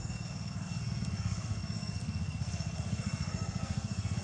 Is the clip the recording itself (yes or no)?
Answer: no